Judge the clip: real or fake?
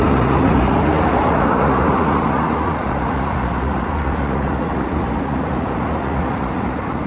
fake